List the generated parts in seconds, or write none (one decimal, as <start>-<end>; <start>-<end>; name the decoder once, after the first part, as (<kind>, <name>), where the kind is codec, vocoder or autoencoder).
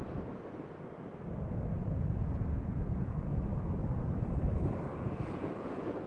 1.8-3.4 (vocoder, Vocos); 4.9-6.1